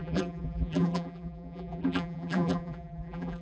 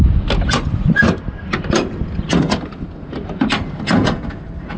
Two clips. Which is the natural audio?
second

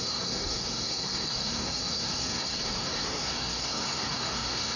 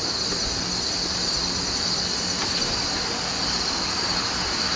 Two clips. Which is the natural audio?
second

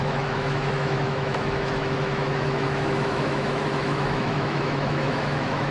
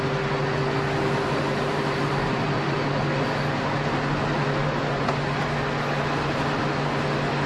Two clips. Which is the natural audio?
second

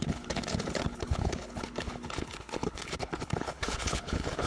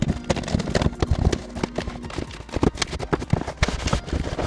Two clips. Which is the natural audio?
second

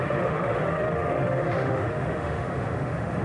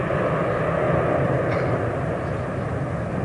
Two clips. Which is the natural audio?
second